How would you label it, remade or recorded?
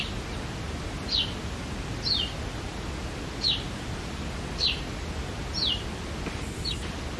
recorded